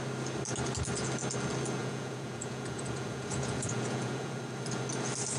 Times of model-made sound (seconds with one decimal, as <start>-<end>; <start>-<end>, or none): 1.8-4.4